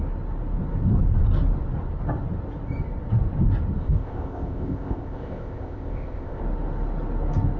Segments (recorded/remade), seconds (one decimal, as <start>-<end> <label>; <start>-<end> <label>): 0.0-3.8 recorded; 3.8-6.4 remade; 6.4-7.6 recorded